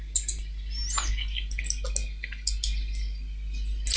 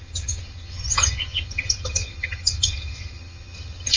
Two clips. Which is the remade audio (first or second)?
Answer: second